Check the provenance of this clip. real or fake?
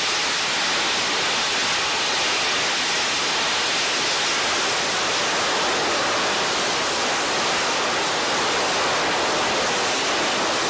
real